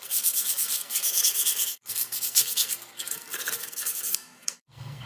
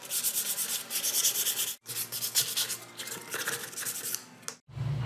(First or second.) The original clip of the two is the second